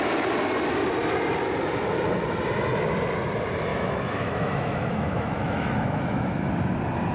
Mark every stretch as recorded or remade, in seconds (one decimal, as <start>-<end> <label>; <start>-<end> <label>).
0.0-3.7 recorded; 3.7-6.5 remade; 6.5-7.1 recorded